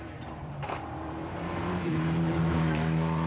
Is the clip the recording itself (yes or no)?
no